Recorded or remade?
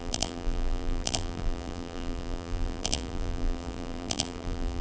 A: remade